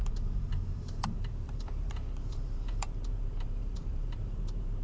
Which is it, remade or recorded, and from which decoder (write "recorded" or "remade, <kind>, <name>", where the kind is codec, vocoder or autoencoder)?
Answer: remade, vocoder, BigVGAN v2